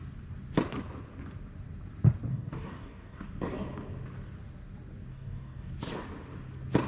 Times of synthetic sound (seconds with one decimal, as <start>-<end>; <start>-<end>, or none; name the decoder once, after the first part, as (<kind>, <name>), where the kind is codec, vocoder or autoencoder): 2.3-3.3 (codec, DAC); 5.1-5.7